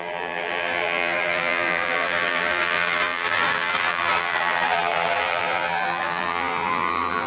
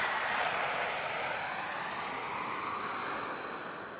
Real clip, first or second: second